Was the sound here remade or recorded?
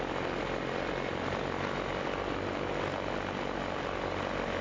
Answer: recorded